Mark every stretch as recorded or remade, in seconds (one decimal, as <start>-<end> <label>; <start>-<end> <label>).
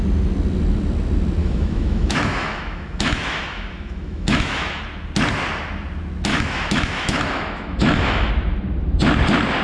0.0-1.4 recorded; 1.4-4.8 remade; 4.8-6.3 recorded; 6.3-8.3 remade; 8.3-9.6 recorded